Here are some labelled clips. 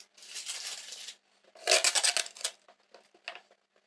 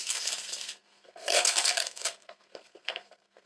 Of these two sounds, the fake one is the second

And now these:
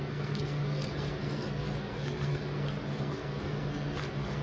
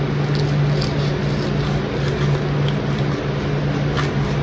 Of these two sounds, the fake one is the first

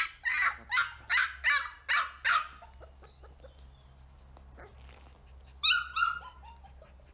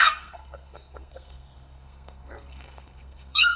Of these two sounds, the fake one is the second